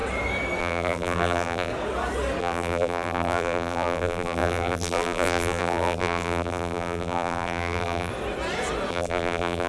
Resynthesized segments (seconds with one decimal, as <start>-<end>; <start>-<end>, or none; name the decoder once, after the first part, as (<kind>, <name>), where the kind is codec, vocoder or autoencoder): 0.6-1.7 (vocoder, BigVGAN v2); 2.4-8.1; 8.9-9.7